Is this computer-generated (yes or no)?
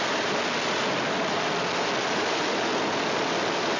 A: no